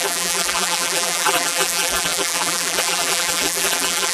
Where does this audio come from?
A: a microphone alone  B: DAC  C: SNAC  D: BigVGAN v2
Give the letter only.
D